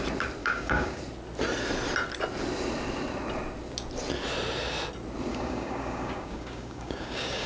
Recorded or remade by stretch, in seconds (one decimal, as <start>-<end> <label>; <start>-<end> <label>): 0.0-0.4 recorded; 0.4-1.0 remade; 1.0-5.3 recorded; 5.3-7.5 remade